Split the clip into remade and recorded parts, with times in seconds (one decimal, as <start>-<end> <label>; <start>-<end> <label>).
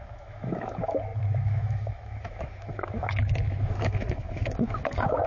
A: 0.0-5.3 remade